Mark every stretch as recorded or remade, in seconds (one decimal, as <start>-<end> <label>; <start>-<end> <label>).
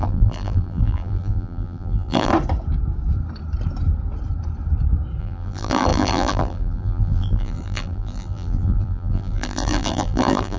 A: 0.0-2.3 remade; 2.3-5.2 recorded; 5.2-10.6 remade